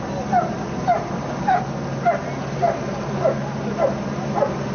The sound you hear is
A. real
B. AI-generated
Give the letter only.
A